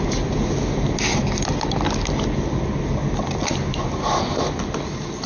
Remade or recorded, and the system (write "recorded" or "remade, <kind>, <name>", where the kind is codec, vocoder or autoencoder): recorded